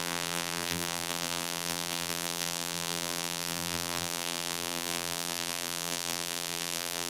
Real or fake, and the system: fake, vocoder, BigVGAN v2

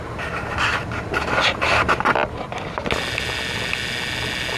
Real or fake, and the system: real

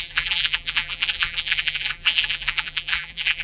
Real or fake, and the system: fake, vocoder, BigVGAN v2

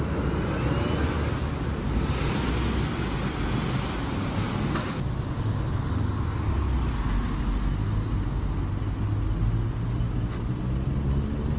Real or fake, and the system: real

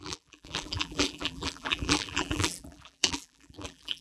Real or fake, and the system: fake, vocoder, BigVGAN v2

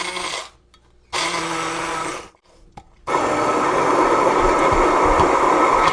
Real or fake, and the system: real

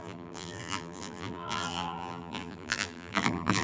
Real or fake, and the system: fake, vocoder, BigVGAN v2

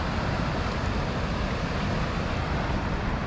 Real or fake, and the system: real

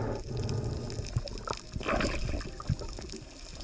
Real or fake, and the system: real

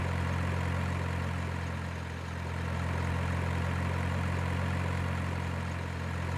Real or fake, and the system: real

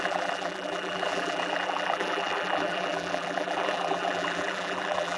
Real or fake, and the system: fake, vocoder, BigVGAN v2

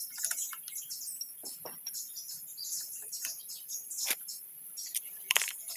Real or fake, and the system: fake, vocoder, BigVGAN v2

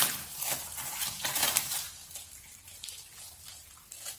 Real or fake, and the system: fake, vocoder, BigVGAN v2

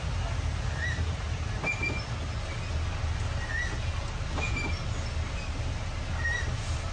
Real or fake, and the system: real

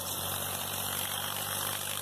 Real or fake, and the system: fake, vocoder, BigVGAN v2